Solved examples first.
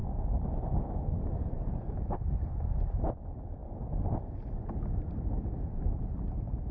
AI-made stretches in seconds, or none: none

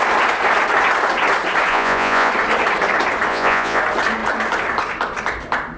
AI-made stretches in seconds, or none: 1.7-2.3 (vocoder, Vocos); 3.3-3.8

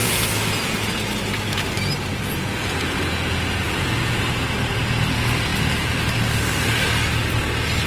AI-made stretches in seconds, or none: 0.0-0.9 (vocoder, Vocos); 2.1-4.2

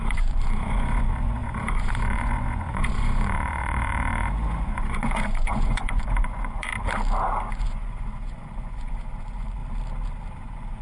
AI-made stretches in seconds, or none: 0.0-6.7 (vocoder, Vocos); 7.5-9.6; 10.4-10.8

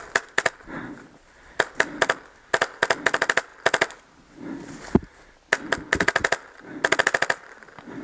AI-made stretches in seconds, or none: none

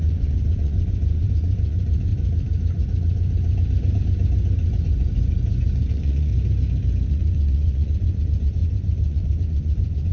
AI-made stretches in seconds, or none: 0.0-2.1 (vocoder, Vocos); 4.8-6.3; 7.1-10.1

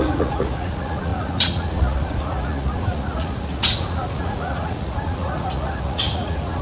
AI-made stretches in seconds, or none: 0.0-6.6 (vocoder, Vocos)

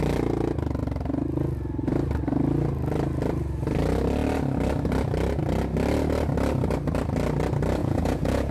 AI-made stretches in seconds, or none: 7.8-8.5 (vocoder, Vocos)